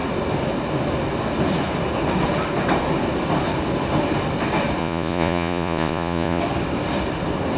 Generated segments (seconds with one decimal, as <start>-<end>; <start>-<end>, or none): 4.8-6.4